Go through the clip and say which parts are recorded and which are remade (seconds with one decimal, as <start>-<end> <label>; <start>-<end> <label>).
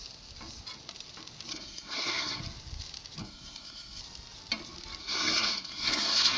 0.0-1.5 recorded; 1.5-2.4 remade; 2.4-3.2 recorded; 3.2-4.0 remade; 4.0-5.0 recorded; 5.0-6.4 remade